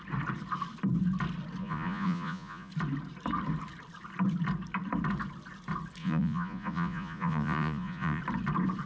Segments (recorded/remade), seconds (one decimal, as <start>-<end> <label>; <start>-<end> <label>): 0.0-1.6 recorded; 1.6-2.7 remade; 2.7-6.0 recorded; 6.0-8.2 remade; 8.2-8.9 recorded